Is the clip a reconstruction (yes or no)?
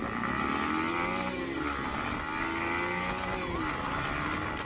no